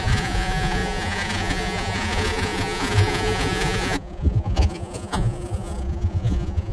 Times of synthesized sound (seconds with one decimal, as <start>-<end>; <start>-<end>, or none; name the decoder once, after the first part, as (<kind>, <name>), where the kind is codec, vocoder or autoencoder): 0.0-6.7 (vocoder, Vocos)